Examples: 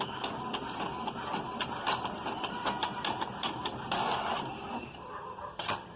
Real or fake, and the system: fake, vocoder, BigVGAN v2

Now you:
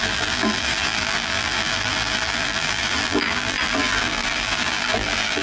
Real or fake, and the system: fake, vocoder, BigVGAN v2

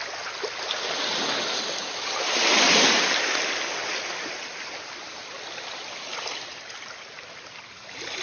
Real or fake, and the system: real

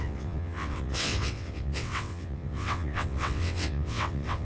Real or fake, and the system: fake, vocoder, WaveNeXt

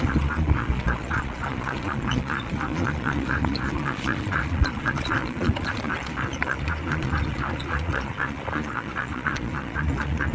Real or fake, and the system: fake, vocoder, Vocos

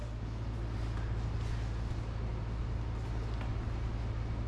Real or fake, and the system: real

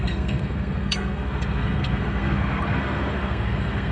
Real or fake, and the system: fake, codec, SNAC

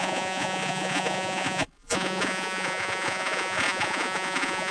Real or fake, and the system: fake, vocoder, Vocos